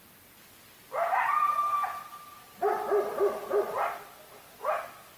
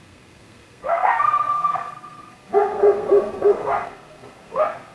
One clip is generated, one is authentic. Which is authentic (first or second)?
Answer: first